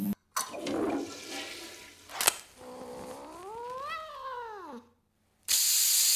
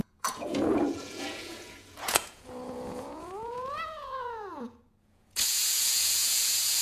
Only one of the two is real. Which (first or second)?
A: first